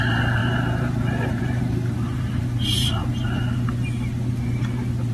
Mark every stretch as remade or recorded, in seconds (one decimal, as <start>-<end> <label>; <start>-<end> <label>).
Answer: 0.0-3.0 remade; 3.0-5.1 recorded